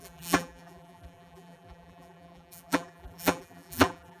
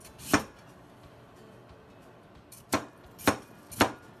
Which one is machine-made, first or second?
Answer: first